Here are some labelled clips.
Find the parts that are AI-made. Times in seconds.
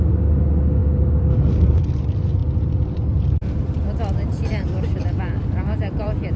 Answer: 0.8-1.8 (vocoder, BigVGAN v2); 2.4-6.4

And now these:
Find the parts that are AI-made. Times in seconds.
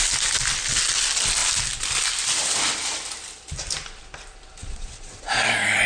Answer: 4.6-5.1 (vocoder, Vocos)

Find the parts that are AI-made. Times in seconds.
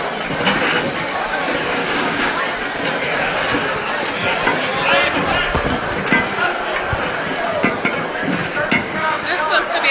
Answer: 1.8-2.4 (codec, DAC); 8.8-9.4